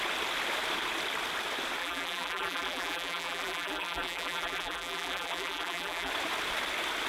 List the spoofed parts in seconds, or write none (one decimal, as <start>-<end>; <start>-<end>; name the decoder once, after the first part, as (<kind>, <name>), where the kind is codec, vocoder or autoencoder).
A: 1.8-6.1 (vocoder, BigVGAN v2)

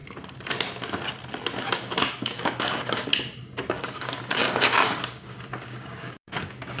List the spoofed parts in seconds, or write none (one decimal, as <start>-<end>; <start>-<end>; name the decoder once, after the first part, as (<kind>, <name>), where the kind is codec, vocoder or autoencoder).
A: 1.6-3.1 (codec, DAC); 3.7-6.8

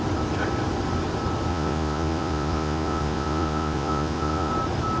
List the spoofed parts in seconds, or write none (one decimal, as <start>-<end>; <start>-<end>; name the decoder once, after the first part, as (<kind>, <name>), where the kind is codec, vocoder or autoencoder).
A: 1.5-4.5 (vocoder, Vocos)